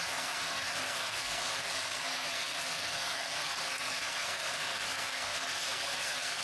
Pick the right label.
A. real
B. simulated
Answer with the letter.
B